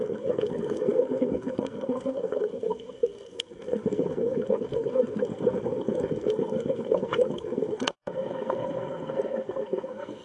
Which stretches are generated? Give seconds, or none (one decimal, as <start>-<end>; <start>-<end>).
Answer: 0.0-10.2